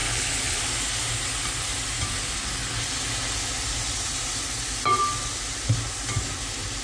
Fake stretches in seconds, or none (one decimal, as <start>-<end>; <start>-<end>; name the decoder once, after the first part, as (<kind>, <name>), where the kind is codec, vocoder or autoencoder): 0.0-0.6 (codec, HILCodec)